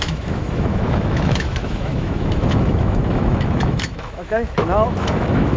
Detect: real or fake fake